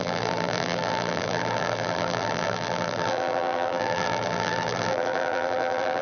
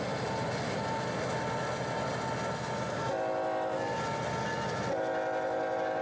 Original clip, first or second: second